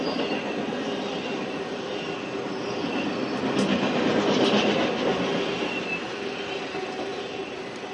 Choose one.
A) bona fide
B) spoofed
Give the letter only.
A